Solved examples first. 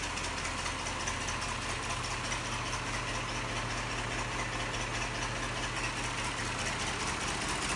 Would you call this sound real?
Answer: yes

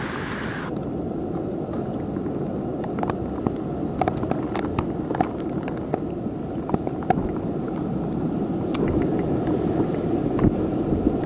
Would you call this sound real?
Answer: yes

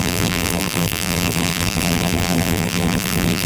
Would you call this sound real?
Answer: no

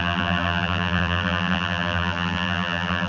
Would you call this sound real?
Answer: no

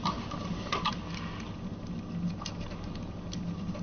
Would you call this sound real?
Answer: yes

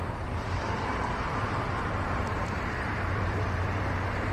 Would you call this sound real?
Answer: no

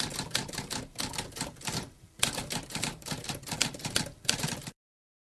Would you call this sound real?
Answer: no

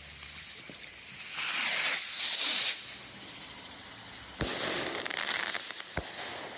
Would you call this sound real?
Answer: yes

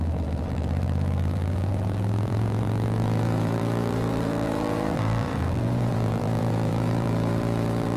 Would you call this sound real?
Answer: no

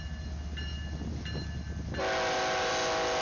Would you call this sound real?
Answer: yes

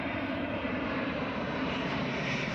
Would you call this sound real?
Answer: no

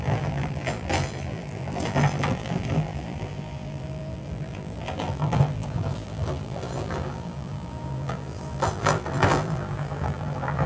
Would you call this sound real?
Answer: no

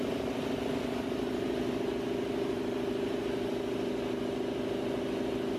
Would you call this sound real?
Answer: yes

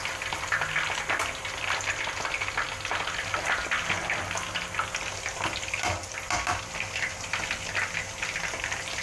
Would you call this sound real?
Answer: yes